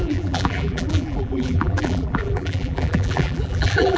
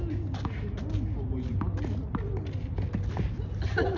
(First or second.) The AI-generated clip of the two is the first